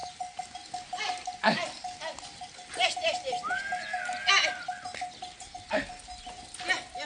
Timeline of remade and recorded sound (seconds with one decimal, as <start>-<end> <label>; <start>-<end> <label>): 0.0-7.1 recorded